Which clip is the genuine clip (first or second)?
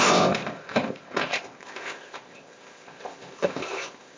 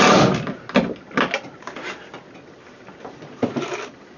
second